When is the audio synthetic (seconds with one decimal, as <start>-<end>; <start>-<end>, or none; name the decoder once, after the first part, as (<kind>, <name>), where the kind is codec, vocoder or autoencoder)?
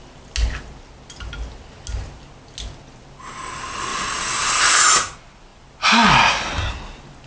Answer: 3.9-4.5 (vocoder, BigVGAN v2)